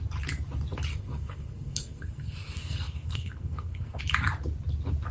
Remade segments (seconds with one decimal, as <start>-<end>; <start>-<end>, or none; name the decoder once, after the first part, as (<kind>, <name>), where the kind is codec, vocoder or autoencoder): 0.9-4.0 (codec, SNAC)